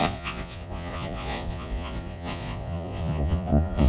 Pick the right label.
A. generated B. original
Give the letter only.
A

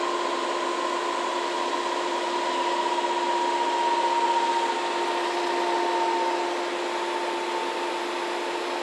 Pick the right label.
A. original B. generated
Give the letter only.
A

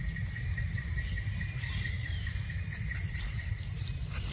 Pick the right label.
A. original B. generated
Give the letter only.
B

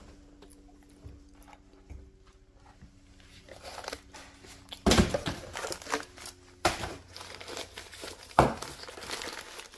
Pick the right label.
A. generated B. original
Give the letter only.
B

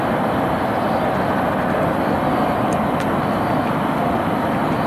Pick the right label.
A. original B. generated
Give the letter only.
A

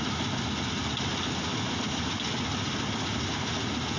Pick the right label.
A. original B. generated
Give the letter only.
A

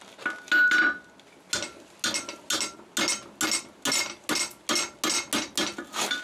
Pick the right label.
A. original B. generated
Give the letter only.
A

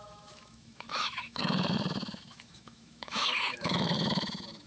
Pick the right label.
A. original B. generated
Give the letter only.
B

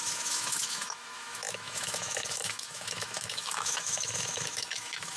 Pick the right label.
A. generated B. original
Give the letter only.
A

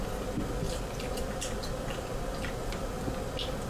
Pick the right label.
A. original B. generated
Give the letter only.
A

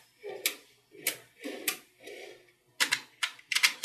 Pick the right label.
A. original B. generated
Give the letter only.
A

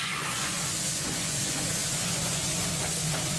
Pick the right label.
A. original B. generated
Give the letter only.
B